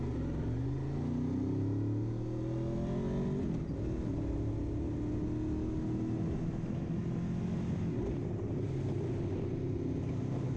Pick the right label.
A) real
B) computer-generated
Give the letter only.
A